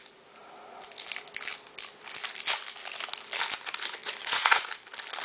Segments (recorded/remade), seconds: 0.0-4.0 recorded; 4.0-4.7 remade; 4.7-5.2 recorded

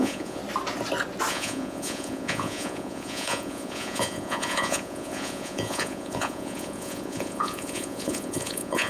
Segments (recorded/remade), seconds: 0.0-0.4 remade; 0.4-1.3 recorded; 1.3-8.9 remade

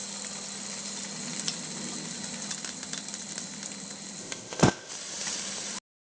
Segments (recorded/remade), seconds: 0.0-4.2 recorded; 4.2-4.9 remade; 4.9-6.1 recorded

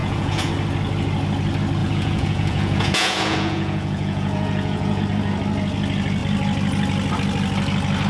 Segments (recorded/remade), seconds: 0.0-0.5 remade; 0.5-1.8 recorded; 1.8-5.0 remade; 5.0-8.1 recorded

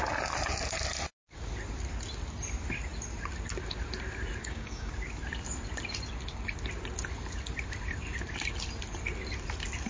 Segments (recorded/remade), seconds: 0.0-4.4 recorded; 4.4-4.9 remade; 4.9-9.9 recorded

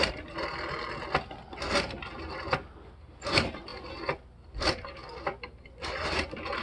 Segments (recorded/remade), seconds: 0.0-6.6 recorded

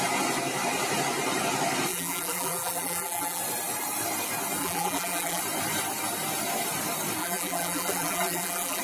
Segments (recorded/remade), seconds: 0.0-1.9 recorded; 1.9-3.4 remade; 3.4-4.6 recorded; 4.6-5.4 remade; 5.4-7.2 recorded; 7.2-8.8 remade